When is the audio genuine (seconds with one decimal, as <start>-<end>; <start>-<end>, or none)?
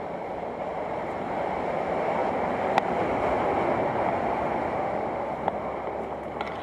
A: 2.2-6.6